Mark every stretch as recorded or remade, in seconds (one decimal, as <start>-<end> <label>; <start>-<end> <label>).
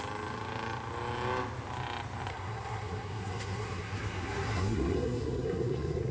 0.0-2.3 recorded; 2.3-6.1 remade